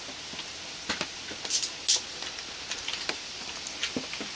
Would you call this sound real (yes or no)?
yes